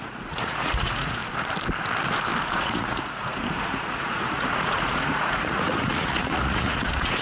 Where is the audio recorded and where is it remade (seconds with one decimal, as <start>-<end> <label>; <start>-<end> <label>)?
0.0-1.2 remade; 1.2-2.4 recorded; 2.4-7.2 remade